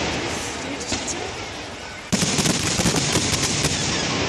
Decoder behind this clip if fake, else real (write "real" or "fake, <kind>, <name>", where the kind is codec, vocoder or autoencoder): fake, vocoder, BigVGAN v2